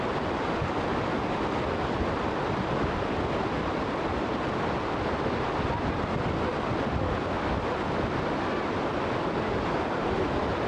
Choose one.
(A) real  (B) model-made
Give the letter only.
A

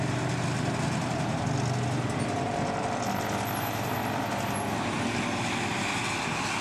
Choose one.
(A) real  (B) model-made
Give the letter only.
A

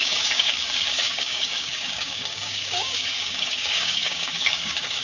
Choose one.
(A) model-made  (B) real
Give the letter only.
A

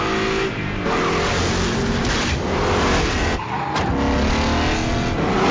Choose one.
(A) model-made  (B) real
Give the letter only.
B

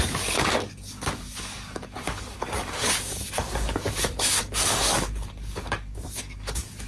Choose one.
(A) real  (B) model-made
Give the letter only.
B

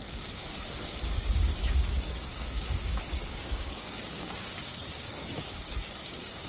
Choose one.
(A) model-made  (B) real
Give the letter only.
A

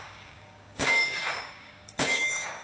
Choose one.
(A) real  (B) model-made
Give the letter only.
B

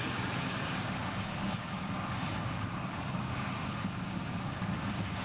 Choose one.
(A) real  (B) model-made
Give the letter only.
B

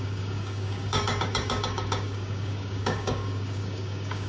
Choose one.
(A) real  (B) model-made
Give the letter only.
B